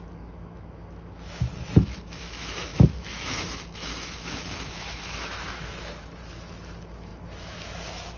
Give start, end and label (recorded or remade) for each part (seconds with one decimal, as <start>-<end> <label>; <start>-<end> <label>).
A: 0.0-8.2 remade